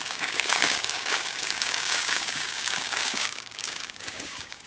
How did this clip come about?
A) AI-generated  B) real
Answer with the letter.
A